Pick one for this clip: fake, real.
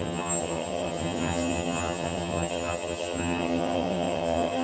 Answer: fake